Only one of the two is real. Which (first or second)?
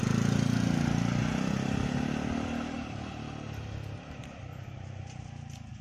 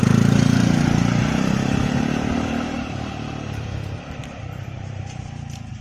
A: first